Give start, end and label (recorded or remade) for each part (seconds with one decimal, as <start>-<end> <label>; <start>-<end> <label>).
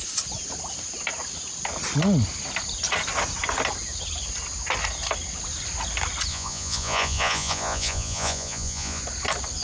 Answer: 0.0-6.3 recorded; 6.3-9.0 remade; 9.0-9.6 recorded